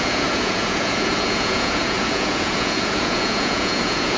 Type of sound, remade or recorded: remade